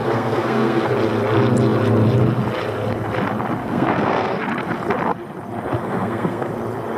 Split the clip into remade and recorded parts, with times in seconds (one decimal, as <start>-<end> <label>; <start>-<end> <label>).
0.0-0.9 remade; 0.9-3.6 recorded; 3.6-4.4 remade; 4.4-5.8 recorded; 5.8-6.5 remade; 6.5-7.0 recorded